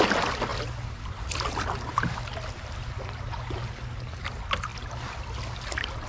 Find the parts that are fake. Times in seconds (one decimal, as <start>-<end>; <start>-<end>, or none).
none

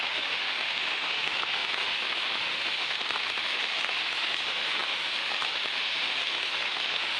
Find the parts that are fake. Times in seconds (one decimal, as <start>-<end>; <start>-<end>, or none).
0.0-7.2

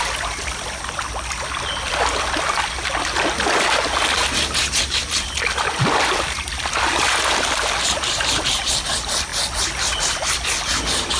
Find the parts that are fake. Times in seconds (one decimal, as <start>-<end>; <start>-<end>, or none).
none

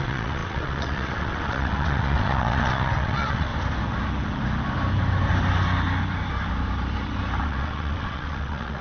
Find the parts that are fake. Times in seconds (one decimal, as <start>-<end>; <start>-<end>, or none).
0.0-3.5; 7.4-8.8

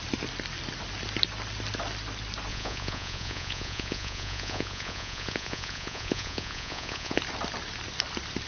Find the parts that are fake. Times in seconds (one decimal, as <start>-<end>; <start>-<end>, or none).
2.5-7.2

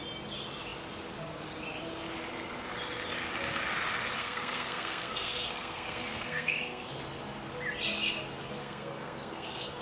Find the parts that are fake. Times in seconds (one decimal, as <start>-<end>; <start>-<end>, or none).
4.2-7.0; 8.6-9.8

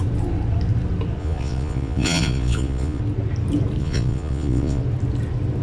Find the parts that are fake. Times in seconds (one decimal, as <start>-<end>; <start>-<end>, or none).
1.2-3.0; 3.8-4.8

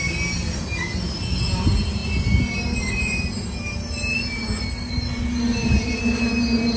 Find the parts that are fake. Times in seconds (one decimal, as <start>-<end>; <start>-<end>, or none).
none